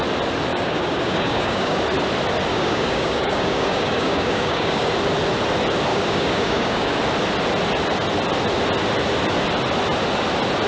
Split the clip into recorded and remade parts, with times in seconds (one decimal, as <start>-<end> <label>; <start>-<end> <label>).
0.0-0.5 recorded; 0.5-1.8 remade; 1.8-2.5 recorded; 2.5-4.9 remade; 4.9-5.9 recorded; 5.9-7.0 remade; 7.0-10.7 recorded